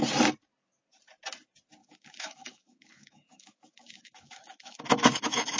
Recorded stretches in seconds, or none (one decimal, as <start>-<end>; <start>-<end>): 0.0-1.8

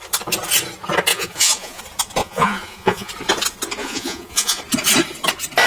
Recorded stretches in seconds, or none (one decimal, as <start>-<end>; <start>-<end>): 0.0-1.1; 1.8-2.2; 3.1-3.8; 4.6-5.7

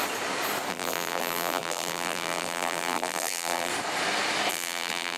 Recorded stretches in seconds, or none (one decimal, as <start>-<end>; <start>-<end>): 0.0-0.7; 3.7-4.5

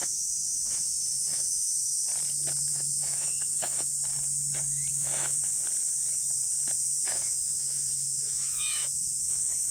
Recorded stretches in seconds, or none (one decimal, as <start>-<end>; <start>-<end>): 1.7-2.7; 3.9-4.9; 5.4-7.0

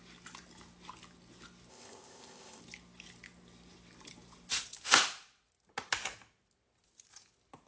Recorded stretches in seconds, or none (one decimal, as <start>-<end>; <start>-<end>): 0.0-1.7; 2.6-7.7

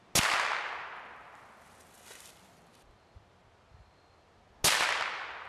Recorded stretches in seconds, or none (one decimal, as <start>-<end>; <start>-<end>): 0.0-5.5